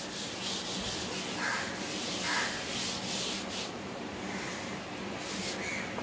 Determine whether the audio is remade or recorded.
recorded